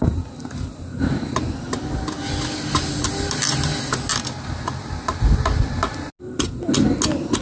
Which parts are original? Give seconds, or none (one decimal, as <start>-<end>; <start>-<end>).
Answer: 0.0-7.4